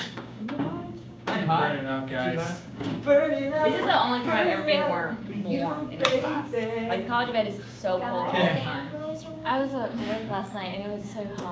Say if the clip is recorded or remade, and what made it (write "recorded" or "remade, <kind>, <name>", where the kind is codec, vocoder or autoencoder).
remade, codec, DAC